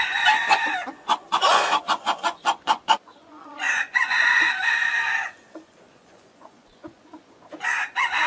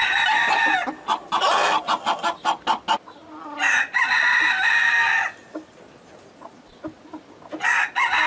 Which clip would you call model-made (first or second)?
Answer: first